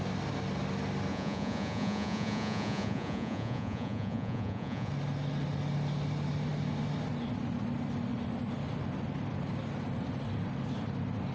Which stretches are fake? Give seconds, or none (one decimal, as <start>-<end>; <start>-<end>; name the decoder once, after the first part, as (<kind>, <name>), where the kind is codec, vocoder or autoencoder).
1.1-4.9 (vocoder, Vocos)